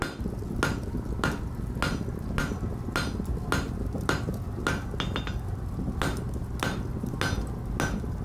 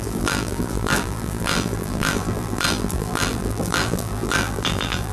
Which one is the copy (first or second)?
second